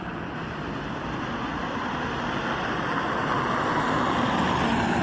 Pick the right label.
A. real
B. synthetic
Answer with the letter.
A